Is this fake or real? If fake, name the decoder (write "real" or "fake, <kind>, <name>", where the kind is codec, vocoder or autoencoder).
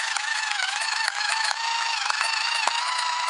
fake, autoencoder, DAC-VAE